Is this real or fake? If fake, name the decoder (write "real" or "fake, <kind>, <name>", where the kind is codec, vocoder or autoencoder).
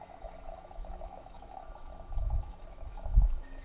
fake, autoencoder, DAC-VAE